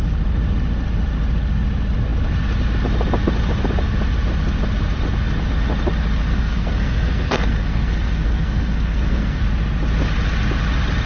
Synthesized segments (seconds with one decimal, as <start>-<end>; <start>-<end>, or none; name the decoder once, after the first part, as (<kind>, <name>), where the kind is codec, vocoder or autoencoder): 6.3-9.4 (codec, SNAC)